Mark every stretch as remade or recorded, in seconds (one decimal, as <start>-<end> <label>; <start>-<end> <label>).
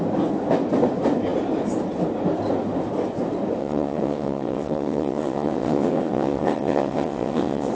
0.0-3.6 recorded; 3.6-7.7 remade